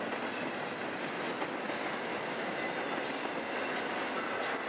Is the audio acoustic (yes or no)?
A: yes